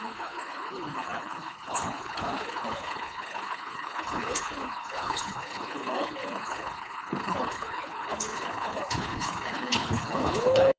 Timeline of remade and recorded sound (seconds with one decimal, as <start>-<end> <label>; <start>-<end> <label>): 0.0-10.8 remade